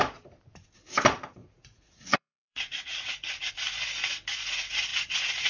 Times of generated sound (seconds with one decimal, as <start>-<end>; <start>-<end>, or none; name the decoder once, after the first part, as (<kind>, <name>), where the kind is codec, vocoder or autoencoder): 1.4-3.5 (vocoder, Vocos); 4.9-5.5